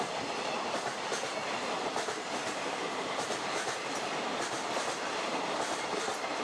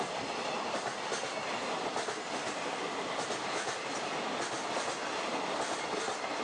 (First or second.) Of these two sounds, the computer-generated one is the first